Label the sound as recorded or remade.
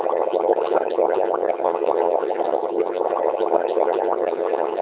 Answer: remade